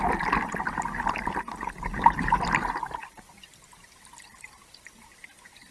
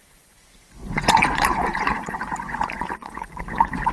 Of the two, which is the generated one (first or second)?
second